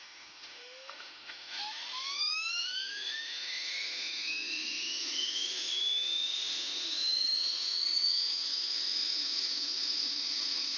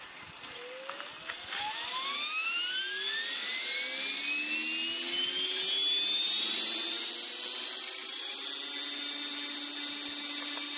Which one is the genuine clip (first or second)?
second